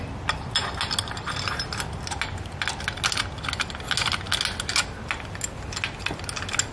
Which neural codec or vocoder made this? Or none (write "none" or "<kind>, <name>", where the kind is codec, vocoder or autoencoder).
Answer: none